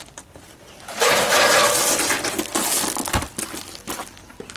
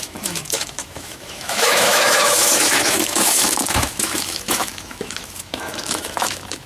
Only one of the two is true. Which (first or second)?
first